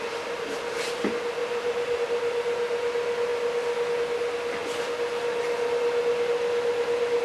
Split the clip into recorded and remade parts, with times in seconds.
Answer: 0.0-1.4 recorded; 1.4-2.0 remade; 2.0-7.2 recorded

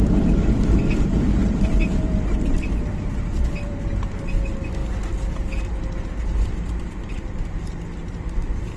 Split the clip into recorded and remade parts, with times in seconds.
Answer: 0.0-1.4 recorded; 1.4-4.0 remade; 4.0-8.8 recorded

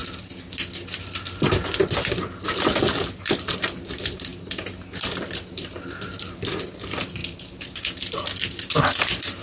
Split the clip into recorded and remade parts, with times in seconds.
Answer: 0.0-3.1 recorded; 3.1-4.3 remade; 4.3-5.6 recorded; 5.6-9.4 remade

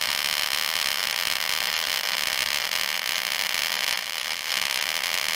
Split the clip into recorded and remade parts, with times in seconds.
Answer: 0.0-4.0 recorded; 4.0-4.5 remade; 4.5-5.4 recorded

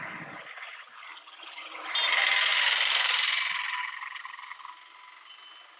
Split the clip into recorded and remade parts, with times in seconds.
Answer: 0.0-0.7 recorded; 0.7-1.8 remade; 1.8-2.5 recorded; 2.5-3.4 remade; 3.4-5.8 recorded

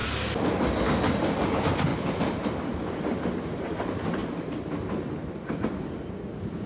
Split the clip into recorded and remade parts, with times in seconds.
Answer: 0.0-1.9 recorded; 1.9-2.8 remade; 2.8-4.2 recorded; 4.2-5.3 remade; 5.3-6.7 recorded

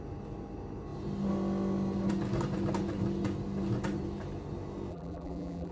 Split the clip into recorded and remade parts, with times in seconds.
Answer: 0.0-4.9 recorded; 4.9-5.7 remade

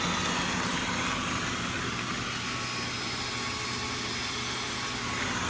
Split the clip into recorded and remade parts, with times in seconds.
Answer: 0.0-1.2 recorded; 1.2-1.9 remade; 1.9-5.5 recorded